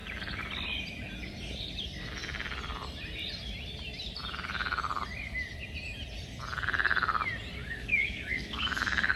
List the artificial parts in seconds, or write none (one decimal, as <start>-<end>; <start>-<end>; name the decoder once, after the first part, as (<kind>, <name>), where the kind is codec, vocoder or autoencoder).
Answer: 7.6-9.2 (codec, DAC)